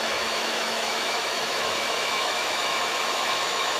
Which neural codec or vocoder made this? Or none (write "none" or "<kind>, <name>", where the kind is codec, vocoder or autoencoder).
autoencoder, DAC-VAE